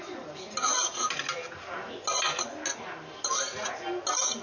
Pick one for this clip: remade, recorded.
recorded